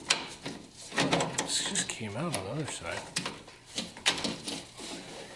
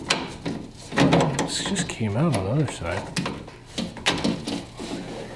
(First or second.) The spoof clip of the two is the first